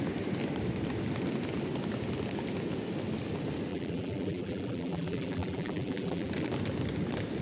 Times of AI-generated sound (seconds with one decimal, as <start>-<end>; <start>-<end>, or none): 3.7-6.3